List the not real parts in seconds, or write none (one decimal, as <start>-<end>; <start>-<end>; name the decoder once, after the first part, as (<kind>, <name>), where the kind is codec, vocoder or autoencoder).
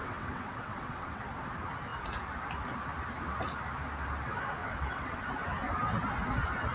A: 0.0-1.2 (vocoder, WaveNeXt); 4.6-5.3